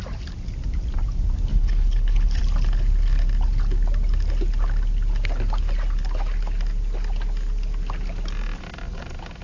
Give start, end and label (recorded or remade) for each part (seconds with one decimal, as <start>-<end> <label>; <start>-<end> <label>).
0.0-1.5 recorded; 1.5-2.4 remade; 2.4-9.4 recorded